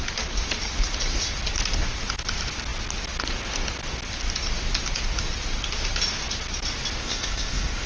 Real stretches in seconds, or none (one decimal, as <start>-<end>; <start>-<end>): 0.0-7.0